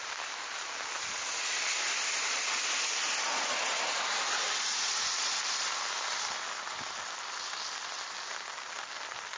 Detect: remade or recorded recorded